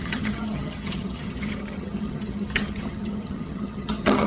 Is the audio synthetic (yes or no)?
yes